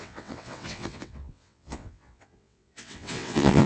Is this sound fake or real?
fake